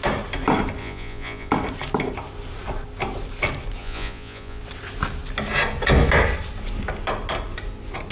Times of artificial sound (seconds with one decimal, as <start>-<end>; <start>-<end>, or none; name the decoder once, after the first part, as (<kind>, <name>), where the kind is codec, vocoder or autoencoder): 0.8-1.5 (vocoder, Vocos); 3.8-4.6